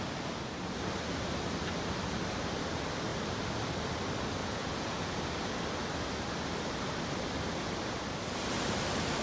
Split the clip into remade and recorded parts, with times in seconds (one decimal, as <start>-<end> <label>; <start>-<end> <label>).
0.0-4.4 recorded; 4.4-5.2 remade; 5.2-9.2 recorded